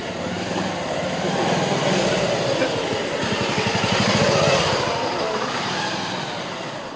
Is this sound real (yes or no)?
yes